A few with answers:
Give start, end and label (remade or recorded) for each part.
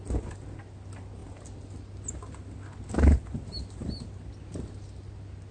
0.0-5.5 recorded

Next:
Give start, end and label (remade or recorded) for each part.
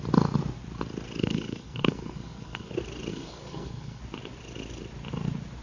0.0-1.2 recorded; 1.2-2.7 remade; 2.7-3.1 recorded; 3.1-4.0 remade; 4.0-5.6 recorded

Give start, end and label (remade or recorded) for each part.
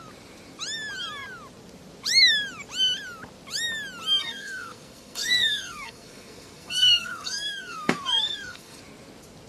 0.0-4.2 recorded; 4.2-8.8 remade; 8.8-9.5 recorded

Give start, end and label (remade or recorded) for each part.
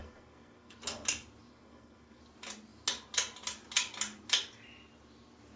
0.0-0.8 remade; 0.8-1.5 recorded; 1.5-2.2 remade; 2.2-5.6 recorded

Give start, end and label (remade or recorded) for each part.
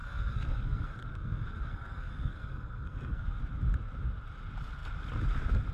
0.0-3.4 remade; 3.4-5.7 recorded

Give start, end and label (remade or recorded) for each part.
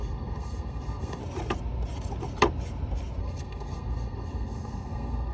0.0-1.2 remade; 1.2-3.2 recorded; 3.2-5.3 remade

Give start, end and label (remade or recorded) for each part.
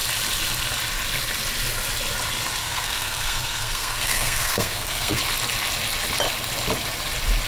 0.0-2.6 recorded; 2.6-5.2 remade; 5.2-7.5 recorded